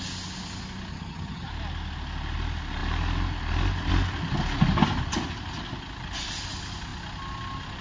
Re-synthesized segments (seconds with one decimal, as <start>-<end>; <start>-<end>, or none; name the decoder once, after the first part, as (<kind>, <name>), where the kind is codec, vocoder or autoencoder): 0.9-1.5 (vocoder, HiFi-GAN)